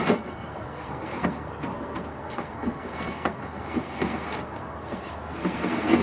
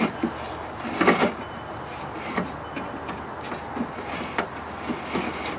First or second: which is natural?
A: second